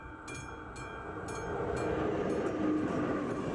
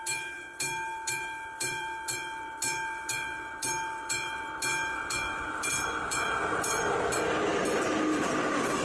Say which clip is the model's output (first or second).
second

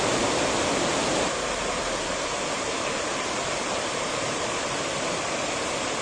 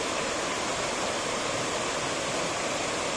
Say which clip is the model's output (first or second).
first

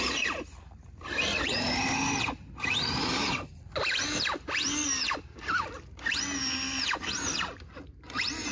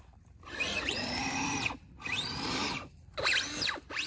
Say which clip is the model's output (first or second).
second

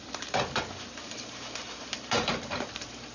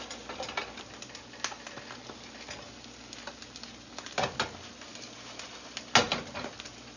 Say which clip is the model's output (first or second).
first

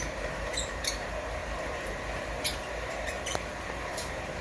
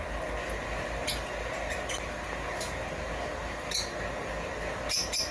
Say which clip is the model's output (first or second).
first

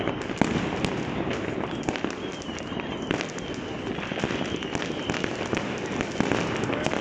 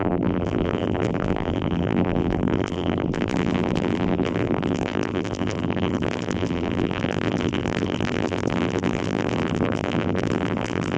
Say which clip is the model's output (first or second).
second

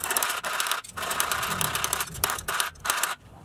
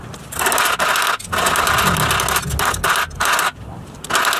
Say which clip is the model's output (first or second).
first